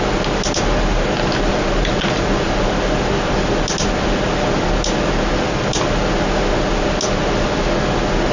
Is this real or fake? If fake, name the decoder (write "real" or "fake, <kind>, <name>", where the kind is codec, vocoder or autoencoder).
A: real